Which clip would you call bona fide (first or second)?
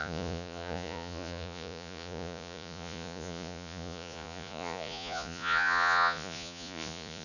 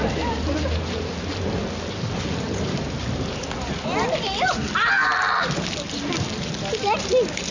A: second